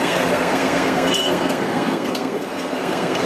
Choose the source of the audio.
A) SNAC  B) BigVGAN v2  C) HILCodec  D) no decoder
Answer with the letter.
A